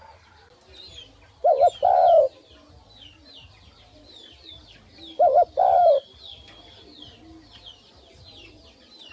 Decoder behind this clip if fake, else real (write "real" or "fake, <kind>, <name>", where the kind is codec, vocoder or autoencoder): real